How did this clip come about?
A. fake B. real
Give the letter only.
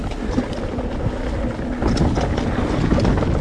B